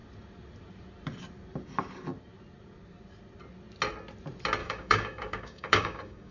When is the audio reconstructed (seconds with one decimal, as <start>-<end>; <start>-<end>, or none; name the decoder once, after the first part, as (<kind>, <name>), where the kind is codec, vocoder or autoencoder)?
4.6-6.3 (codec, DAC)